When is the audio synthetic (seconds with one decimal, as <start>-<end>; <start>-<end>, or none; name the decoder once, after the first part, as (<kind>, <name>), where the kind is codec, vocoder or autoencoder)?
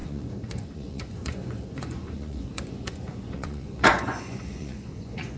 0.0-5.4 (vocoder, Vocos)